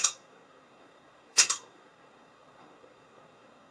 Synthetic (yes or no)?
yes